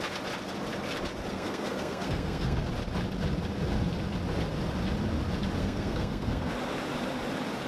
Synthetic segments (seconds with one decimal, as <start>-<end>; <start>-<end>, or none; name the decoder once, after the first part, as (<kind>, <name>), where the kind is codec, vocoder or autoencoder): 1.3-2.7 (codec, SNAC); 5.6-6.5